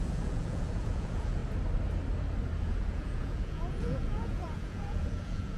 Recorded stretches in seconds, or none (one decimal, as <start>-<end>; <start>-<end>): 1.4-2.6